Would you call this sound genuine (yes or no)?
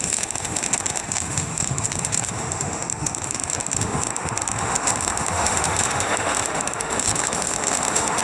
no